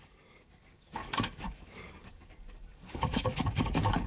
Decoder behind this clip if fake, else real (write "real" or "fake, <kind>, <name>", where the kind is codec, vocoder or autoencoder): fake, codec, DAC